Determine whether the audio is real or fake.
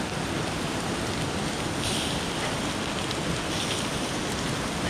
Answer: real